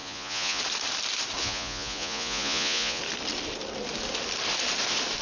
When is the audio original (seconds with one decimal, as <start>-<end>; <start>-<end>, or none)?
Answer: 0.6-1.4; 3.0-5.2